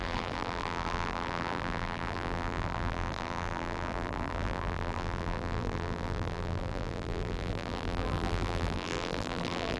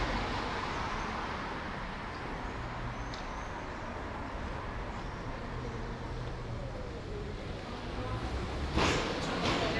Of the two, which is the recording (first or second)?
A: second